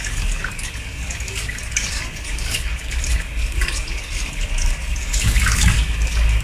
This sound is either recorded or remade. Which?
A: remade